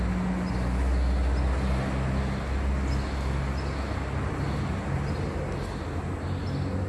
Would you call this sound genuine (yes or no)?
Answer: yes